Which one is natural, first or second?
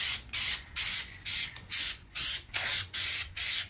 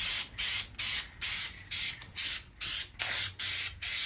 second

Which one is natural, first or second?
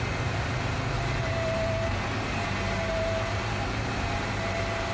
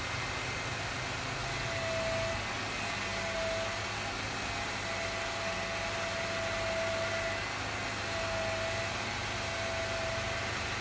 second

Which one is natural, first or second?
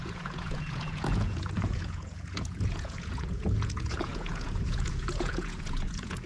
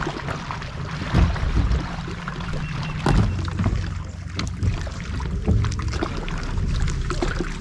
second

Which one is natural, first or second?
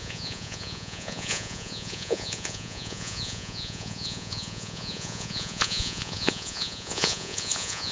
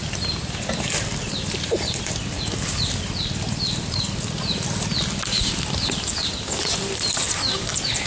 second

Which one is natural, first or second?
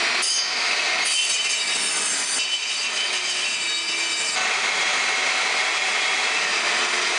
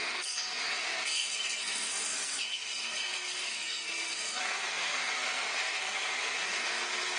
first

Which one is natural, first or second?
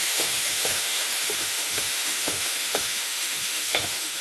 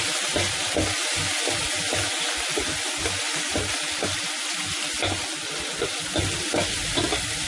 second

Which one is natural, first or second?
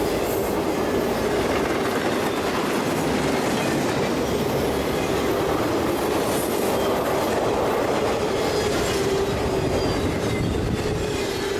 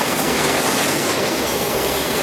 first